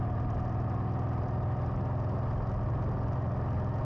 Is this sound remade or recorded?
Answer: recorded